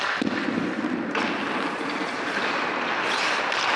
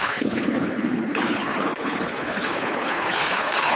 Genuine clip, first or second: first